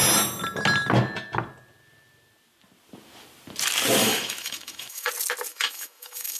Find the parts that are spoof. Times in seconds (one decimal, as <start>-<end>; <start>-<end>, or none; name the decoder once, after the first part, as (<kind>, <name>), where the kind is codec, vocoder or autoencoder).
4.0-5.1 (autoencoder, DAC-VAE); 5.5-6.4